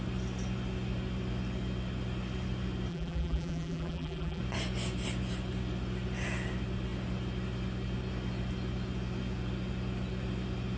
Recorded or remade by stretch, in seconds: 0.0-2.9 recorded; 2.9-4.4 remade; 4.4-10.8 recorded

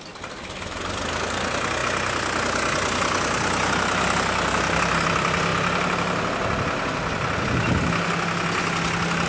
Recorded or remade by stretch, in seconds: 0.0-9.3 recorded

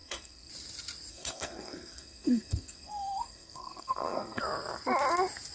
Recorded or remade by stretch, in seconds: 0.0-0.5 remade; 0.5-1.1 recorded; 1.1-4.4 remade; 4.4-5.5 recorded

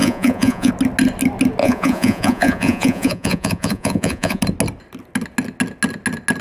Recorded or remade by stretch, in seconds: 0.0-0.7 remade; 0.7-1.6 recorded; 1.6-4.4 remade; 4.4-6.4 recorded